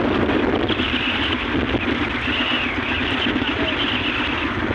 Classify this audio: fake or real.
real